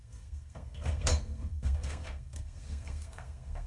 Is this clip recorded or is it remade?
remade